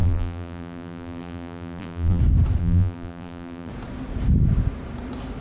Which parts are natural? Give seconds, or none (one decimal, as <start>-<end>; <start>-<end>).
2.2-2.6; 3.7-5.4